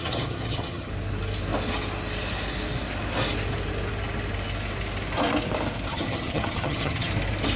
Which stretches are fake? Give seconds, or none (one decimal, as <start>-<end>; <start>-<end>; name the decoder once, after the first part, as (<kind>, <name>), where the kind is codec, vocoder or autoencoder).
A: 0.0-0.9 (vocoder, HiFi-GAN); 5.9-7.1